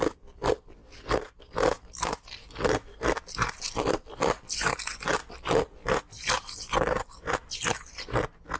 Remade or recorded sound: recorded